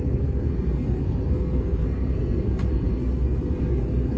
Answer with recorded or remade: remade